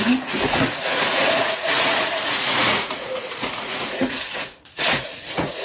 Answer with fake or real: fake